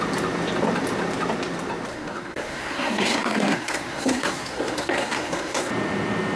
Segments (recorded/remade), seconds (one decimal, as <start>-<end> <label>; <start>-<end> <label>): 0.0-1.9 recorded; 1.9-5.7 remade; 5.7-6.4 recorded